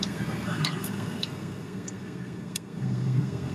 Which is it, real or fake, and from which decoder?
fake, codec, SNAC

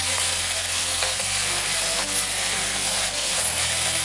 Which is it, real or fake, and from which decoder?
fake, codec, SNAC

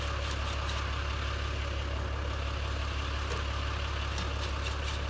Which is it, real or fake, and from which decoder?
real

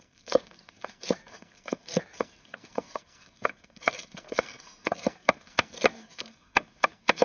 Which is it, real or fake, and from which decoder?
fake, codec, SNAC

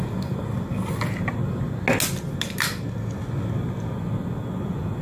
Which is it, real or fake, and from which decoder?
real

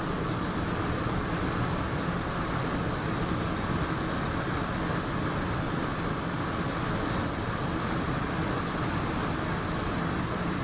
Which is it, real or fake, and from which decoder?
real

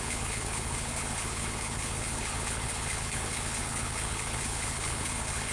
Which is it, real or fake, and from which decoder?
fake, codec, HILCodec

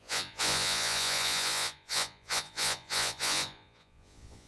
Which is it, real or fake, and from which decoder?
fake, vocoder, Vocos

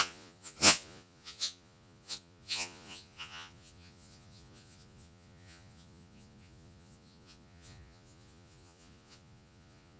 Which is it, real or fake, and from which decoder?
fake, vocoder, Vocos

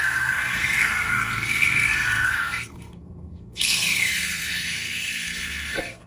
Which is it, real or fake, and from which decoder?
fake, codec, SNAC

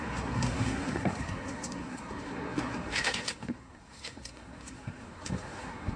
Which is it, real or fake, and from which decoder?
fake, codec, SNAC